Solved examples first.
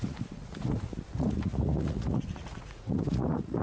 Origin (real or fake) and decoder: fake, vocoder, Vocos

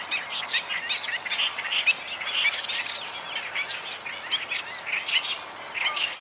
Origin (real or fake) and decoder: real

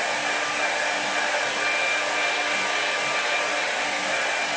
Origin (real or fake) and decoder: real